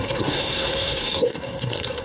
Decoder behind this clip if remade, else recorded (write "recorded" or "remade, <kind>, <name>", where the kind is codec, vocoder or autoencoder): remade, codec, SNAC